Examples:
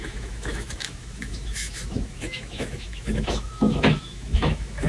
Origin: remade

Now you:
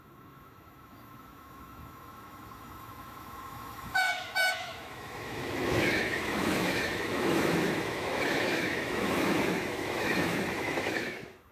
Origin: remade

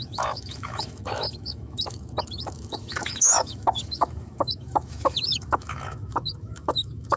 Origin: remade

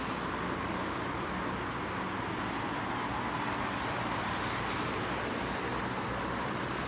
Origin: recorded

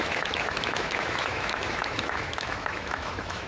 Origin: remade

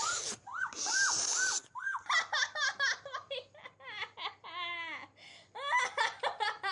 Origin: recorded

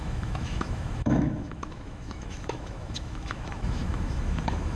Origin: remade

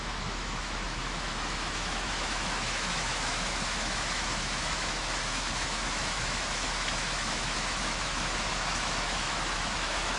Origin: remade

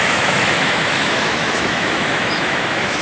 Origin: remade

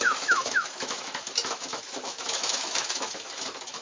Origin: remade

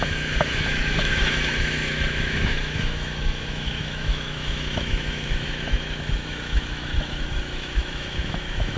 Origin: remade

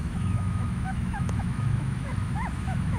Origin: remade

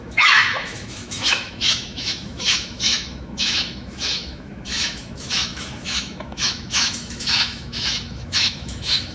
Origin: remade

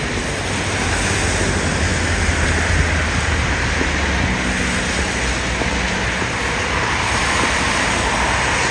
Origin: recorded